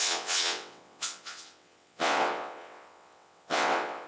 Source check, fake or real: fake